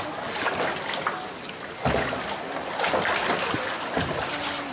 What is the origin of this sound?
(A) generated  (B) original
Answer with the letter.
B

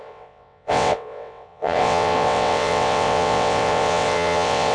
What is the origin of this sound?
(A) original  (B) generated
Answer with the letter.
B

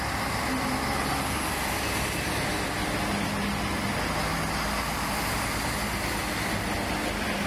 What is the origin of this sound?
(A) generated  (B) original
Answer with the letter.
B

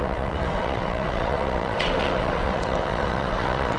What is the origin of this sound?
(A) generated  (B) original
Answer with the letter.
A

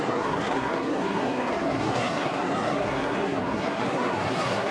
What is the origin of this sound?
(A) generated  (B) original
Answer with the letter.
A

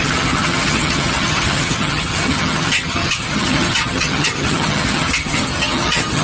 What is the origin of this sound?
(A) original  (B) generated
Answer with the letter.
B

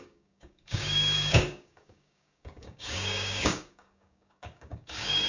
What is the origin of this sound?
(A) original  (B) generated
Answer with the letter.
B